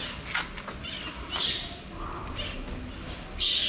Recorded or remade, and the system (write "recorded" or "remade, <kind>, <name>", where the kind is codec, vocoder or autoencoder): recorded